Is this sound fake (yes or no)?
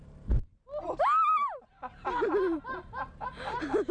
no